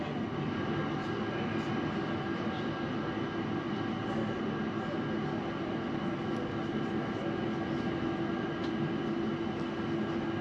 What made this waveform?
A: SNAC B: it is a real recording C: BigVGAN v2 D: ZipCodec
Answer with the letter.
B